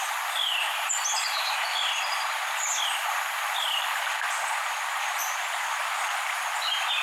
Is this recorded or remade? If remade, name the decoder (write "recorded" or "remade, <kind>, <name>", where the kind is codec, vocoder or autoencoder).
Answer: recorded